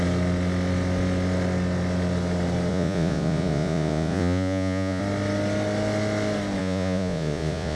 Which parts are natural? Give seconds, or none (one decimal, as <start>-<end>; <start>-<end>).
0.0-2.7; 5.0-6.6